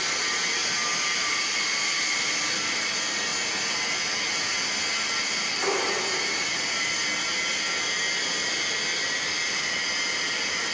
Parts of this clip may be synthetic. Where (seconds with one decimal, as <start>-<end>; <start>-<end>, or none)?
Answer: none